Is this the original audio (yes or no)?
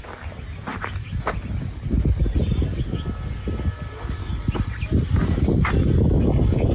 yes